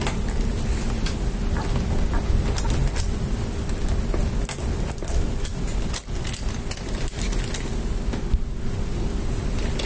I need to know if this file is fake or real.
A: real